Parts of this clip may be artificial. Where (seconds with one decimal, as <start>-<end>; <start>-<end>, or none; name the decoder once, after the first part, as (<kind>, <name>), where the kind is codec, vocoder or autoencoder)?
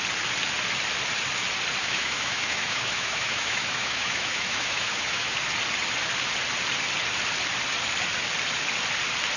1.8-5.3 (autoencoder, DAC-VAE)